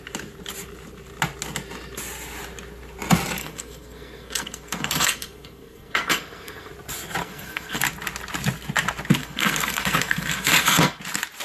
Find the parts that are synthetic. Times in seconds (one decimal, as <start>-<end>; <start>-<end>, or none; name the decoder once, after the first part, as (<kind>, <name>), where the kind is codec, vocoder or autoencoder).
3.4-6.7 (codec, SNAC); 7.2-7.8; 9.2-11.0